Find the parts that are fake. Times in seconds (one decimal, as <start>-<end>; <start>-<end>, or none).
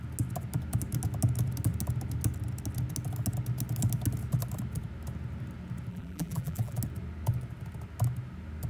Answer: 5.9-6.8